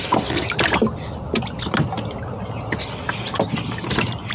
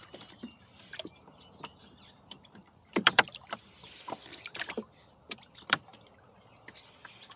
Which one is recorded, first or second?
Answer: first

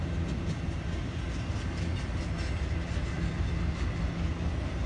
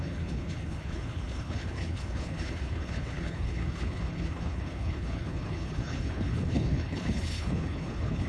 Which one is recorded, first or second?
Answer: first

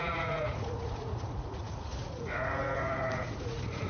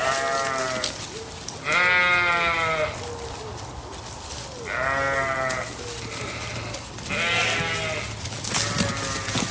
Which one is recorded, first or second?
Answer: second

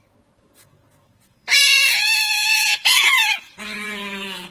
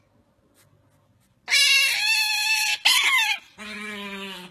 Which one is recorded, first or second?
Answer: second